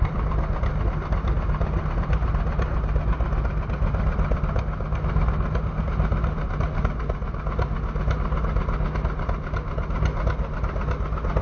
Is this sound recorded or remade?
recorded